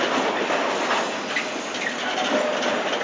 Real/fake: real